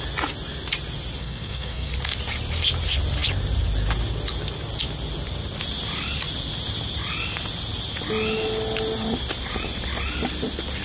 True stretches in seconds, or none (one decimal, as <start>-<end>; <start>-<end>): 0.0-1.2; 1.9-10.8